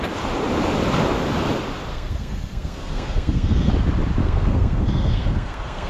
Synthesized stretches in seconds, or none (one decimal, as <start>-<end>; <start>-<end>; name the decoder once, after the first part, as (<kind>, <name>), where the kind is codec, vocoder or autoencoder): 1.9-3.7 (codec, SNAC); 4.2-5.9